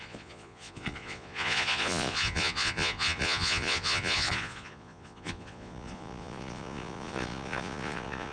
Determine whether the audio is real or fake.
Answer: fake